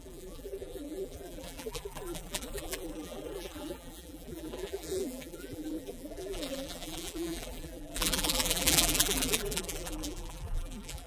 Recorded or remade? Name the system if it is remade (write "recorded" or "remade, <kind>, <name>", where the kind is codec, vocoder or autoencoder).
remade, vocoder, BigVGAN v2